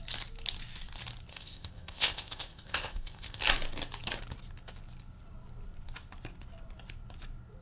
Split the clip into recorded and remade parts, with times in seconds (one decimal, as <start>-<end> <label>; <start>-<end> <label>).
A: 0.0-1.3 recorded; 1.3-3.4 remade; 3.4-7.6 recorded